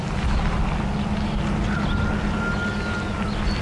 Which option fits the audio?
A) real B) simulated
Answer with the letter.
A